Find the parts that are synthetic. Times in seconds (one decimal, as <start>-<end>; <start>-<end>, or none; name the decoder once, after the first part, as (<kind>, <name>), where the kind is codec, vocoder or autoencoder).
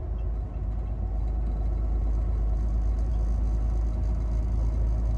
none